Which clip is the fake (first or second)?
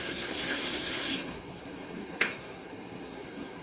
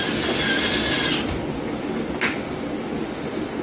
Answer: first